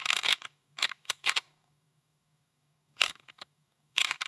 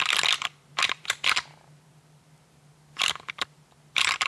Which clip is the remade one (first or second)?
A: first